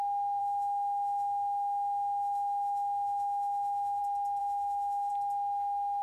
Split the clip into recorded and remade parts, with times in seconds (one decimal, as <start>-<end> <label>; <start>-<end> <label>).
0.0-0.4 recorded; 0.4-4.0 remade; 4.0-4.4 recorded; 4.4-5.1 remade; 5.1-6.0 recorded